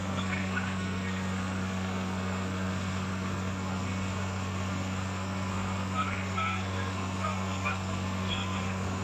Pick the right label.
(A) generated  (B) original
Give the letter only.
A